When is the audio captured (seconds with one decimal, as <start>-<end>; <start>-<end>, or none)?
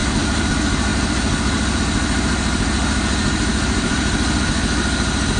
0.5-0.9; 1.8-3.5; 4.4-5.4